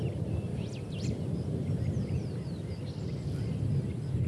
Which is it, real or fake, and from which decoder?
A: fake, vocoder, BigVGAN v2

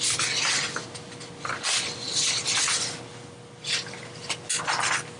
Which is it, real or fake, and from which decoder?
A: real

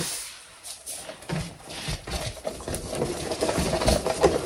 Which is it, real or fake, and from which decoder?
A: real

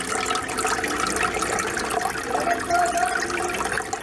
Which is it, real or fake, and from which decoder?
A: real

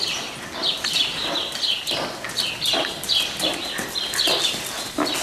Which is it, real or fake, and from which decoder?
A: real